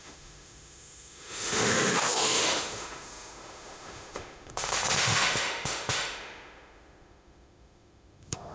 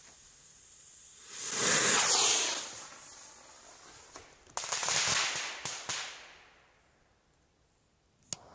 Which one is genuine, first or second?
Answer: second